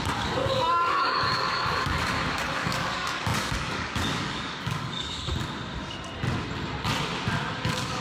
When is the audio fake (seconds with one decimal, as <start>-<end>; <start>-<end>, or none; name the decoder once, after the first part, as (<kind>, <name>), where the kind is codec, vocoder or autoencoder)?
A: 0.0-5.3 (codec, DAC); 7.5-8.0